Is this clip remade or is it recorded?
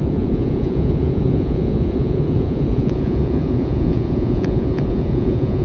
remade